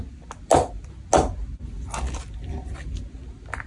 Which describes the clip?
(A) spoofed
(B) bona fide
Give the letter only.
B